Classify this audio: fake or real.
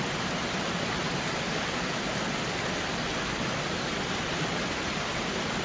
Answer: real